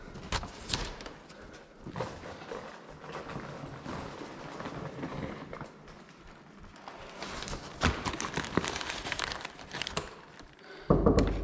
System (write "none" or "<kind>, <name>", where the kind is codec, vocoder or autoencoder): none